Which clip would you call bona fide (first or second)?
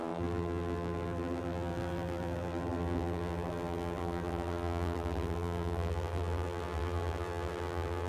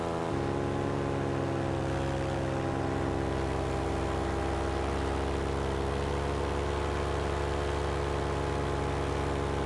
second